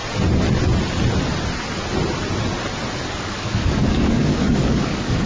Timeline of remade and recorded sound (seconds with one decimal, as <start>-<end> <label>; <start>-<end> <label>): 0.0-3.2 recorded; 3.2-5.3 remade